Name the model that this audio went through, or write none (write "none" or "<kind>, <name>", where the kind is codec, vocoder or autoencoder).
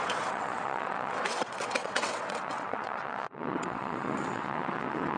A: vocoder, WaveNeXt